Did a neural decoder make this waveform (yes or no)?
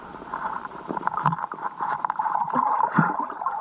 yes